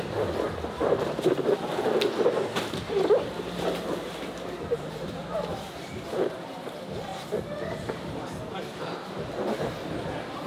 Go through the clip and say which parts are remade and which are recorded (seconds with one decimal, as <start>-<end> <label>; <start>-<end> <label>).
0.0-10.5 recorded